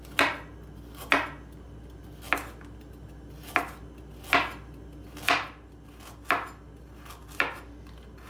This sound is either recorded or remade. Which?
recorded